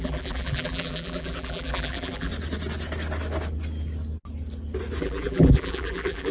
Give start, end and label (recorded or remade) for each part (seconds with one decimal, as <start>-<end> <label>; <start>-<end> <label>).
0.0-2.3 remade; 2.3-5.0 recorded; 5.0-6.3 remade